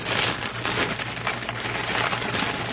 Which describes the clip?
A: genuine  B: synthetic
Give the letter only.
A